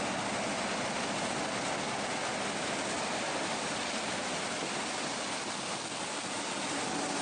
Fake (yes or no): no